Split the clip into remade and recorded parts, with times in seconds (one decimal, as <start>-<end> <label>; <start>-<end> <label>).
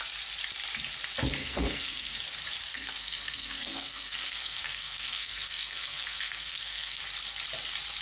0.0-1.4 recorded; 1.4-2.2 remade; 2.2-2.7 recorded; 2.7-7.0 remade; 7.0-8.0 recorded